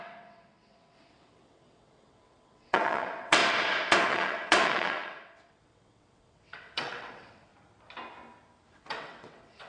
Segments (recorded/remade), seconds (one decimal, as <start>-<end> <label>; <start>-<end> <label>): 0.0-3.4 remade; 3.4-4.1 recorded; 4.1-7.5 remade; 7.5-8.7 recorded; 8.7-9.7 remade